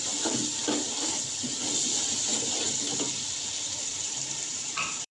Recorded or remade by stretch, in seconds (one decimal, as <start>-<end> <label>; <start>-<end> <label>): 0.0-3.9 recorded; 3.9-5.1 remade